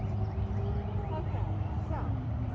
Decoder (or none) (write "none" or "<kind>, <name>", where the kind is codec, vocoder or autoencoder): none